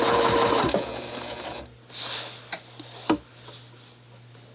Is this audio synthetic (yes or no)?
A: no